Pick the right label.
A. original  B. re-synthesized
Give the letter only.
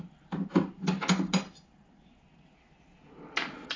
A